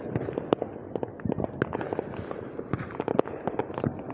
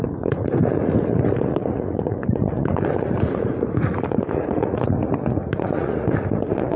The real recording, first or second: first